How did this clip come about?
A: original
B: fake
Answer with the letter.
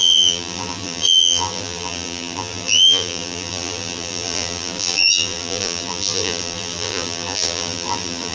B